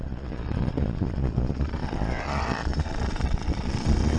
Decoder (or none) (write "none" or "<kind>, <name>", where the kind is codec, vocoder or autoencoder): vocoder, Vocos